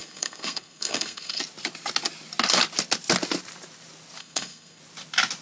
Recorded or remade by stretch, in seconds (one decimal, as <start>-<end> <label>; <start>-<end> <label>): 0.0-1.4 remade; 1.4-4.2 recorded; 4.2-4.8 remade; 4.8-5.4 recorded